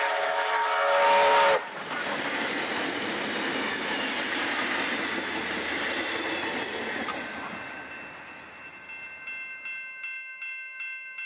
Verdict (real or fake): real